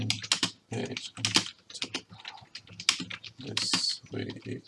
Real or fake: real